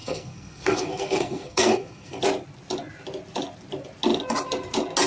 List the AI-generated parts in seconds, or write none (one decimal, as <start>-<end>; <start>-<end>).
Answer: 0.0-2.2